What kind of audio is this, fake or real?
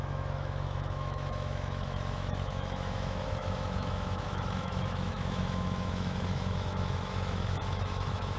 fake